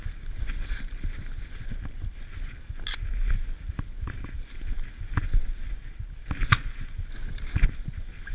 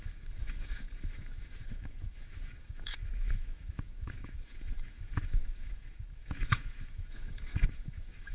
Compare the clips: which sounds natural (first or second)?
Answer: first